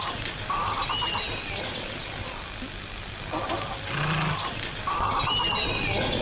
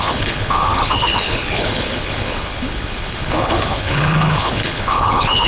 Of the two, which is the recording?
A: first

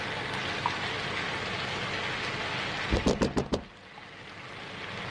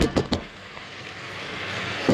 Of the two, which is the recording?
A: first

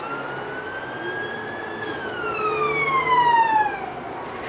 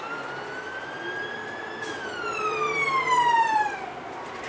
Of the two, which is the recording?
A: first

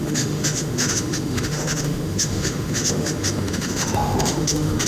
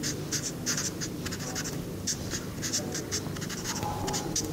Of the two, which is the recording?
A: second